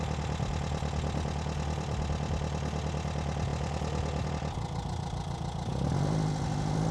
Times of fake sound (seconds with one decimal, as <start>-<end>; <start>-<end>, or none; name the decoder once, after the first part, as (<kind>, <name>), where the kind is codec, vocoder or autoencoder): none